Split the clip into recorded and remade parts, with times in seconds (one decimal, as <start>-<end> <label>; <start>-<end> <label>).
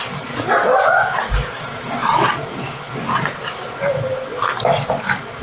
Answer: 0.0-5.4 recorded